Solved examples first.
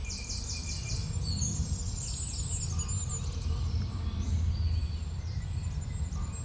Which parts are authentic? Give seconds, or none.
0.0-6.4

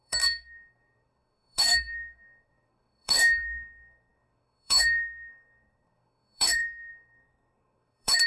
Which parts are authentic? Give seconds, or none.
none

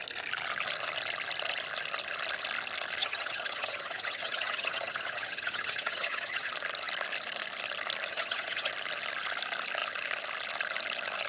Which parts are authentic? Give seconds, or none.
0.0-3.0; 6.5-8.1; 8.7-11.3

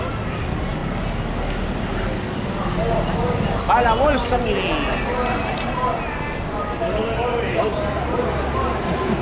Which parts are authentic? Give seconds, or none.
0.0-9.2

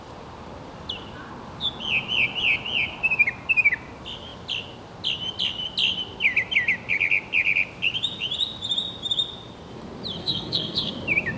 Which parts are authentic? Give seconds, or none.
0.0-10.2; 10.9-11.4

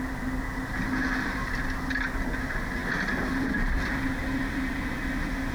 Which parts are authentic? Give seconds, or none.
0.0-5.5

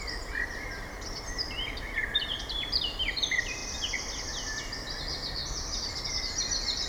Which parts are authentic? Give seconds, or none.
3.6-4.6; 5.4-6.2

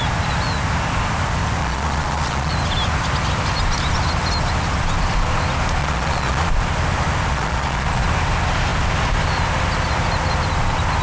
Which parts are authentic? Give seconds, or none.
0.0-1.6; 2.5-5.8; 6.5-7.3; 8.1-11.0